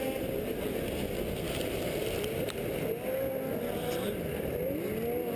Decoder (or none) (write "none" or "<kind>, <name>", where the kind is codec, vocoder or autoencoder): none